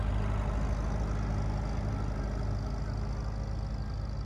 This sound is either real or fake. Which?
real